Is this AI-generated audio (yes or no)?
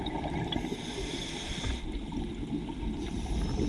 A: no